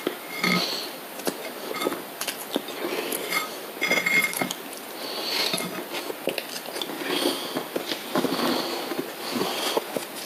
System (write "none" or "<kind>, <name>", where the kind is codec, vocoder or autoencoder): none